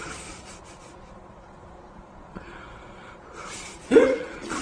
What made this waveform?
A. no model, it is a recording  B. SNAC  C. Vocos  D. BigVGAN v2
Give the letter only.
C